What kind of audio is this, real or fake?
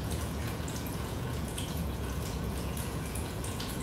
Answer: fake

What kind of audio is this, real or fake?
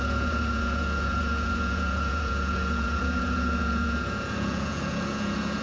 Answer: fake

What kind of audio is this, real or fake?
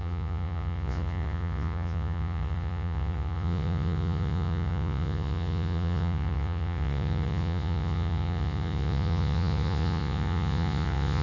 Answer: fake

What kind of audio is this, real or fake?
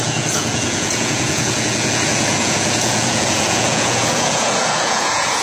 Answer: fake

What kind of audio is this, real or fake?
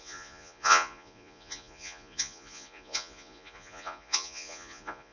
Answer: fake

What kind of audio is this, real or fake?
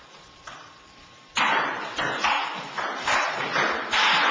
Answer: real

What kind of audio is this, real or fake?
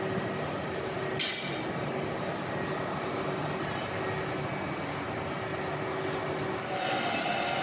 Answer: real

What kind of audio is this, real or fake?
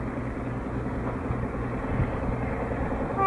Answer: real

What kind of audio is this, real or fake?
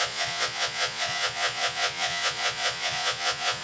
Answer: fake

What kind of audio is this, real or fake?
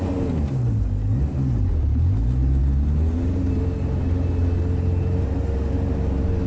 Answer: real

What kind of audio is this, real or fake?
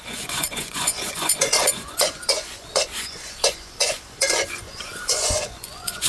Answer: fake